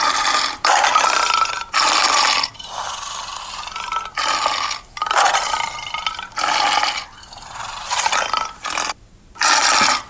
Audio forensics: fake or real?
real